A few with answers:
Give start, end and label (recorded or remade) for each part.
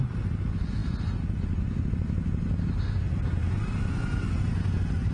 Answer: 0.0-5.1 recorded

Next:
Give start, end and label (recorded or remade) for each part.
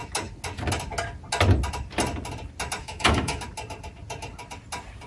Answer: 0.0-2.8 recorded; 2.8-3.4 remade; 3.4-5.1 recorded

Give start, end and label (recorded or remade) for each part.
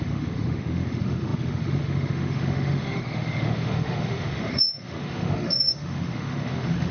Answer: 0.0-6.9 remade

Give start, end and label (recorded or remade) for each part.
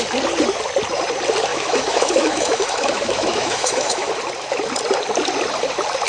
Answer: 0.0-1.5 recorded; 1.5-4.1 remade; 4.1-6.1 recorded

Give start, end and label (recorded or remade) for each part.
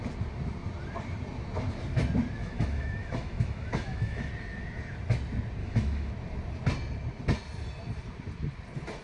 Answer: 0.0-2.4 recorded; 2.4-4.3 remade; 4.3-5.6 recorded; 5.6-6.1 remade; 6.1-9.0 recorded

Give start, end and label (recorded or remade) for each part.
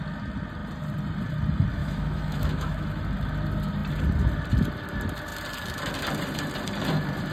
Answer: 0.0-1.8 recorded; 1.8-3.0 remade; 3.0-7.3 recorded